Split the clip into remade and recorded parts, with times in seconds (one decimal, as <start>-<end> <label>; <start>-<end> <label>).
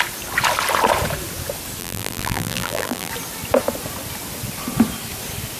0.0-1.8 recorded; 1.8-3.1 remade; 3.1-5.6 recorded